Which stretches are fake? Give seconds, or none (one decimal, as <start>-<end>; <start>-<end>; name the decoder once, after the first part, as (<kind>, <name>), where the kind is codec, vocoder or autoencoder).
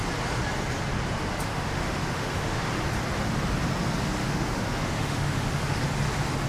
1.5-2.7 (autoencoder, DAC-VAE); 4.2-5.8